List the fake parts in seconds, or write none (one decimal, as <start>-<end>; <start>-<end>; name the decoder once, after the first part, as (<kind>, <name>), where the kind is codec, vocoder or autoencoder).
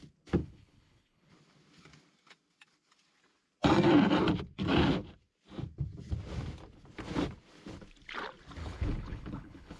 0.4-1.3 (codec, HILCodec); 8.6-9.8